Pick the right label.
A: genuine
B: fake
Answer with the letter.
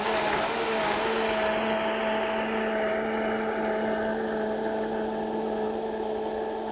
A